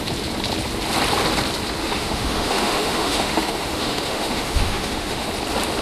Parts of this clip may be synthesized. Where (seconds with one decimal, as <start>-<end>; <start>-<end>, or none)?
1.8-5.3

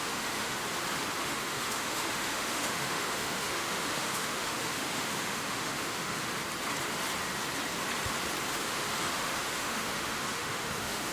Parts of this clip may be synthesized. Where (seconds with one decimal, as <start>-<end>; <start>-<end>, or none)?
0.0-0.6; 1.2-6.3; 8.5-11.1

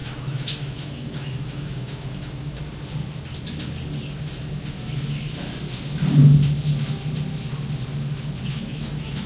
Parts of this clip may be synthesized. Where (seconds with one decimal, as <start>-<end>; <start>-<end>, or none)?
0.0-2.6; 8.5-9.3

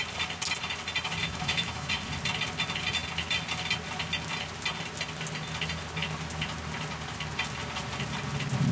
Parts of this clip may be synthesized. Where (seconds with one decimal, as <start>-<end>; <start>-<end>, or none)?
1.2-1.9